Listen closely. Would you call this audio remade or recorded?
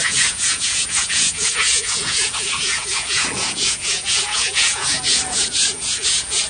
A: remade